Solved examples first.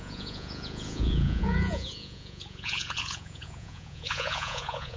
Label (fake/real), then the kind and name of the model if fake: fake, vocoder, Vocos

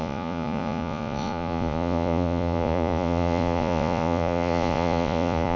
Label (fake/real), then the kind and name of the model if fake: fake, vocoder, Vocos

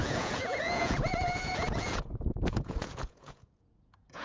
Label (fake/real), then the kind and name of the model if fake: fake, vocoder, Vocos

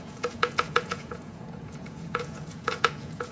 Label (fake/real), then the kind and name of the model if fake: fake, vocoder, Vocos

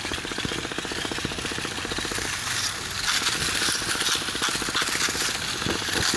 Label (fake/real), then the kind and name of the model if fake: real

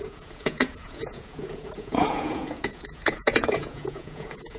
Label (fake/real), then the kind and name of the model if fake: fake, vocoder, Vocos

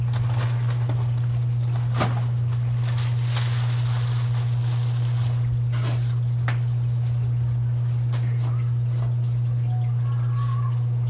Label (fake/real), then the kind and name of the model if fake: real